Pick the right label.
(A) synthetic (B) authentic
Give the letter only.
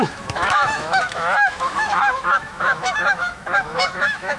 A